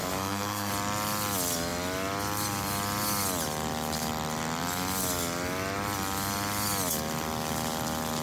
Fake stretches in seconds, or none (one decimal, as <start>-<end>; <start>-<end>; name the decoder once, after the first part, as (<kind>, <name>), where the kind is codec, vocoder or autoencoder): 0.0-0.7 (codec, SNAC)